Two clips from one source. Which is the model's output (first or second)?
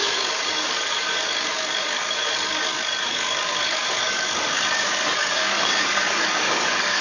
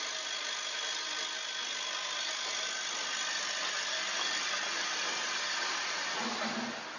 first